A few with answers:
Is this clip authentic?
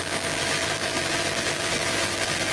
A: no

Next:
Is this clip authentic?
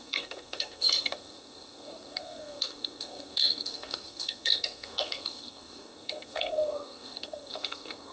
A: no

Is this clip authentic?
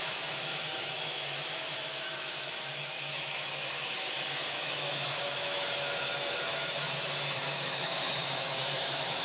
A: no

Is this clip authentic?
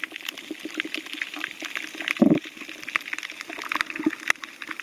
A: yes